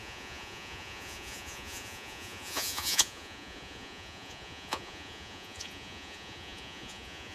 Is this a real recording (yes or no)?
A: no